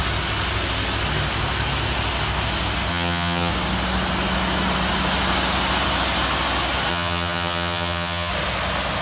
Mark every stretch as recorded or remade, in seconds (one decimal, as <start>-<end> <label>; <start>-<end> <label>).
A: 0.0-2.9 recorded; 2.9-3.5 remade; 3.5-6.9 recorded; 6.9-8.3 remade; 8.3-9.0 recorded